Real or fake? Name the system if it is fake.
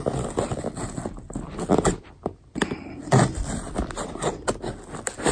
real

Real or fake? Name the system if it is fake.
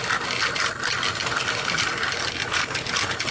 real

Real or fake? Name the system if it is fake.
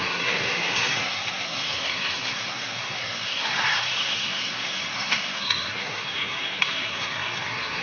fake, codec, SNAC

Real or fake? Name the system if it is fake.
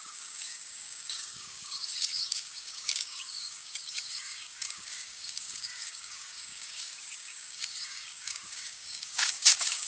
fake, codec, DAC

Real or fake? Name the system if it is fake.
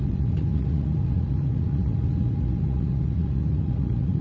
fake, vocoder, Vocos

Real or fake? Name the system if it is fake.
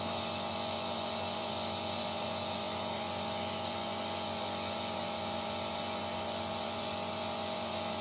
fake, vocoder, Vocos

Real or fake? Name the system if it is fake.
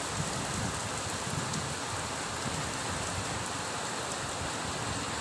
real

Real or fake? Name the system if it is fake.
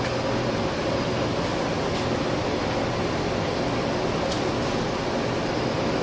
real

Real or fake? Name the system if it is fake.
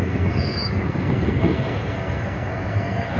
fake, codec, SNAC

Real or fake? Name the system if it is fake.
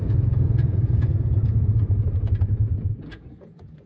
fake, vocoder, Vocos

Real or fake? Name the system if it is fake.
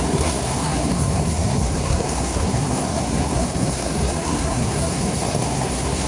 fake, codec, SNAC